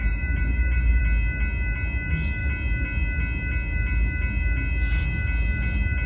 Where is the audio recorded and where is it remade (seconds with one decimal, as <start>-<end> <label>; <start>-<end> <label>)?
0.0-1.0 remade; 1.0-6.1 recorded